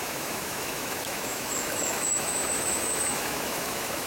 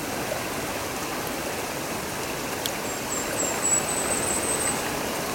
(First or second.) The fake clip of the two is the first